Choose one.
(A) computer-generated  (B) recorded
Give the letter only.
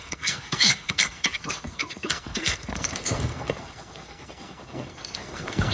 A